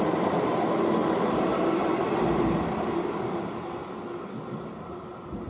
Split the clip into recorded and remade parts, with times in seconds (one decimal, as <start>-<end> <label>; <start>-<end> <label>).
0.0-1.0 recorded; 1.0-3.5 remade; 3.5-4.7 recorded; 4.7-5.5 remade